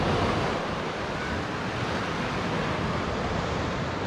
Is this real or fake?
real